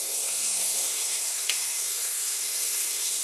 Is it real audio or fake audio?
fake